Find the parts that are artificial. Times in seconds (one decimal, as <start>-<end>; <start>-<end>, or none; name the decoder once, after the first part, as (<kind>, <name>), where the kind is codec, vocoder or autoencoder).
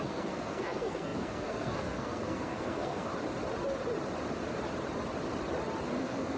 0.0-3.1 (codec, SNAC); 6.0-6.4